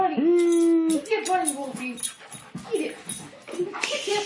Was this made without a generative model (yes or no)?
yes